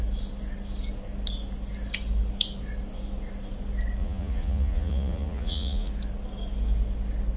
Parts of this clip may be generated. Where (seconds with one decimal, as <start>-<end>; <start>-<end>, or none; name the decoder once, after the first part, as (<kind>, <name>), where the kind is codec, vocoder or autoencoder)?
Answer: 4.0-5.9 (vocoder, Vocos)